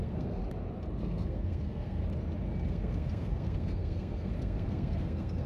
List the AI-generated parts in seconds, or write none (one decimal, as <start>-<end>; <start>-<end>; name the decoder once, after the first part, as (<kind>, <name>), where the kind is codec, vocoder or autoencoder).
0.0-0.4 (codec, SNAC); 1.0-2.0; 2.7-5.5

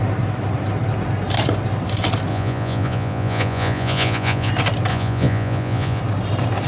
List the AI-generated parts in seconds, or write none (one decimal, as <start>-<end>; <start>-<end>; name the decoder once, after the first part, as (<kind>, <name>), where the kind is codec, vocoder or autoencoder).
2.3-4.5 (vocoder, Vocos); 4.9-6.0

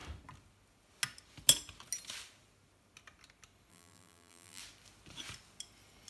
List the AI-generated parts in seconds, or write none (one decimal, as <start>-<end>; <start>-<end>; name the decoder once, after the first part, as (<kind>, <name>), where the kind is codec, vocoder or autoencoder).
3.7-4.6 (vocoder, BigVGAN v2)

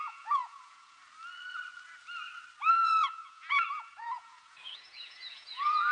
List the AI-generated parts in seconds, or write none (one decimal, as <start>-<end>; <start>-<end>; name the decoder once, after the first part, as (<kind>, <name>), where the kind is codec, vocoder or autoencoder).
0.0-1.0 (vocoder, Vocos); 2.7-5.9

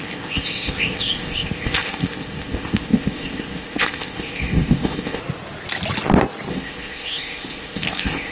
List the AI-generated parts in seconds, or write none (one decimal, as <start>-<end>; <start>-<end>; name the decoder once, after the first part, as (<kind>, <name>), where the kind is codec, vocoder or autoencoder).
0.0-5.2 (codec, ZipCodec); 6.5-8.3

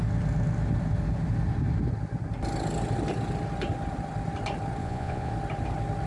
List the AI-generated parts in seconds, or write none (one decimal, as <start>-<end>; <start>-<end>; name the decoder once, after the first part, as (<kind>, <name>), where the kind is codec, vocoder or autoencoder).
4.8-5.3 (vocoder, Vocos)

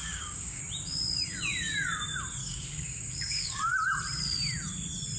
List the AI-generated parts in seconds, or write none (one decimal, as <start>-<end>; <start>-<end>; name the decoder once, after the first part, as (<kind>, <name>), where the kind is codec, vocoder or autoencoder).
0.0-0.6 (codec, DAC); 2.4-3.6

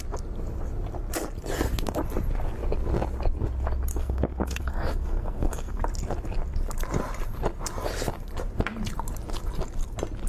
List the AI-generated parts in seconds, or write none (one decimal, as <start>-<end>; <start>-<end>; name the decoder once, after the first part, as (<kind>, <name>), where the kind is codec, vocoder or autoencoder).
3.9-5.8 (codec, SNAC)